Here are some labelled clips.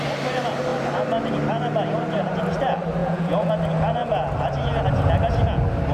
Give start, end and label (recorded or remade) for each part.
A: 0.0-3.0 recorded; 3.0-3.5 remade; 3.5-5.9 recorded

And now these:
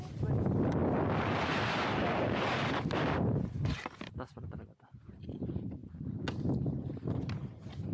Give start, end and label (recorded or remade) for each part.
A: 0.0-7.9 recorded